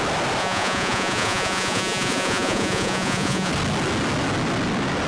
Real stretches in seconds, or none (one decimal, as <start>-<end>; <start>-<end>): 0.0-0.4; 3.5-5.1